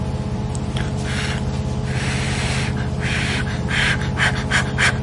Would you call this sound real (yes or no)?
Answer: yes